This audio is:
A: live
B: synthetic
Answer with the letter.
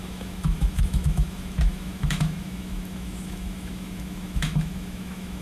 B